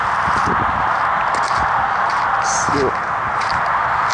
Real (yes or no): yes